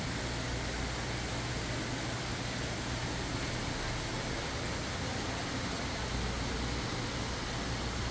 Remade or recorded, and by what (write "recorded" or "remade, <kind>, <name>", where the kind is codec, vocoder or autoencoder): recorded